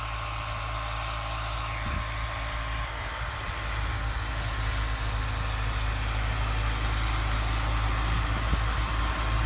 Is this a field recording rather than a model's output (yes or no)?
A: yes